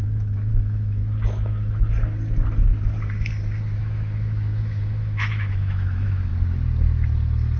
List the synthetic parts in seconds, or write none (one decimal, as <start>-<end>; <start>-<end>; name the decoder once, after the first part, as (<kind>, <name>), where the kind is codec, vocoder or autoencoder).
0.0-1.0 (autoencoder, DAC-VAE); 3.8-6.3